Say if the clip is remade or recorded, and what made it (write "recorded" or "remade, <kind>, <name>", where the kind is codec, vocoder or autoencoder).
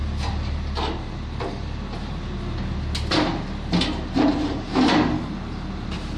recorded